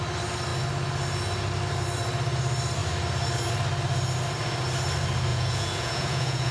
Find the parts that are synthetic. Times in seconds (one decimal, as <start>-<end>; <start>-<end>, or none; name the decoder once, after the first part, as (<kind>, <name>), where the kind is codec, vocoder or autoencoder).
5.3-6.5 (vocoder, Vocos)